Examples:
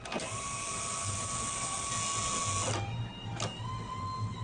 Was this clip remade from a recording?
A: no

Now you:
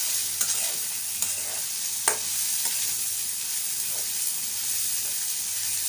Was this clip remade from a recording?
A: no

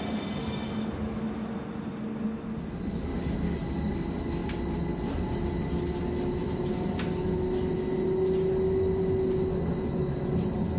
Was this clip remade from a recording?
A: no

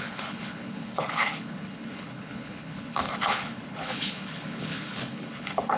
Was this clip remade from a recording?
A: yes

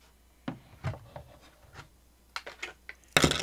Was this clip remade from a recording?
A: no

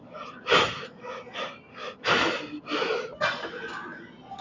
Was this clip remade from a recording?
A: no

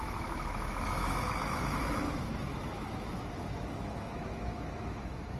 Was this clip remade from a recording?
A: yes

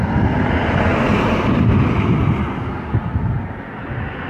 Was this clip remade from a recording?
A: no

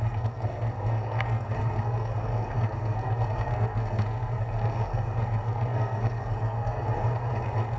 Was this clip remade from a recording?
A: yes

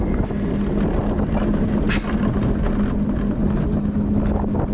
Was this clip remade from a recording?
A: no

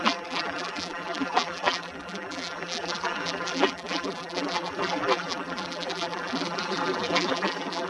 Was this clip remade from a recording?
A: yes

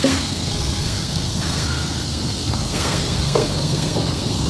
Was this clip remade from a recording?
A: yes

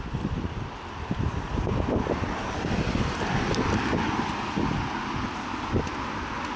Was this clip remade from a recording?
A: no